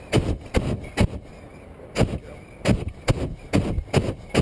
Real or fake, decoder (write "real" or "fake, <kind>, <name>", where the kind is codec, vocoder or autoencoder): real